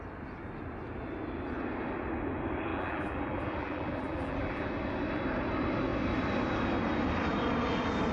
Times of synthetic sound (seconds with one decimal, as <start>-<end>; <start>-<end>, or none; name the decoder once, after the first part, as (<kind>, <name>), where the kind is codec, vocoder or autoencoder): 2.7-4.7 (vocoder, BigVGAN v2)